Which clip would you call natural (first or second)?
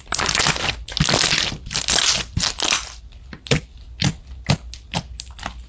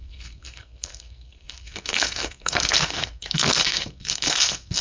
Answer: first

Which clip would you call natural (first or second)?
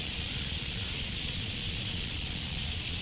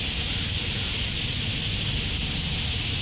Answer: second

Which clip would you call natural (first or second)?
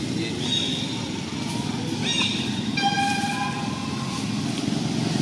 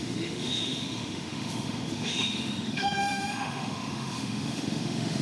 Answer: first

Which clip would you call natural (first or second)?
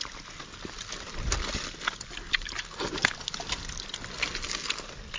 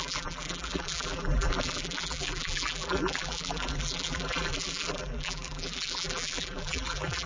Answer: first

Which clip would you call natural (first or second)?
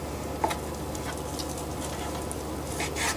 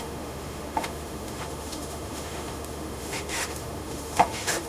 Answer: first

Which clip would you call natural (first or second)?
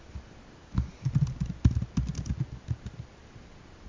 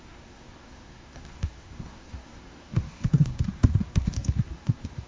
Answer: first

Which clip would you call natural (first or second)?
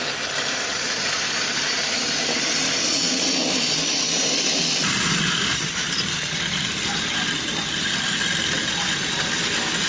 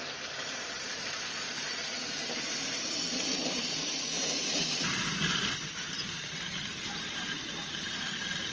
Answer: first